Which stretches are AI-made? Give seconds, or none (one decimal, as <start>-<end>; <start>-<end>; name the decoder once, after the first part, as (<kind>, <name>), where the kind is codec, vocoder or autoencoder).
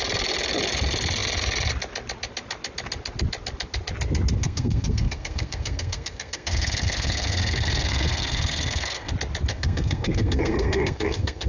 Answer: 4.4-9.1 (codec, SNAC); 9.5-11.5